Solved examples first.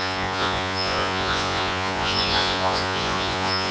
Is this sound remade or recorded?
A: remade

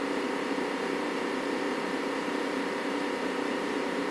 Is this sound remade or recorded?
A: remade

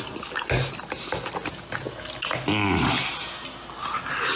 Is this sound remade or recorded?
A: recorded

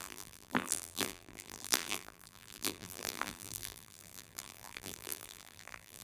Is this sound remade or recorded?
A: remade